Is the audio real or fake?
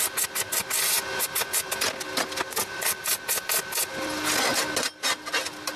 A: real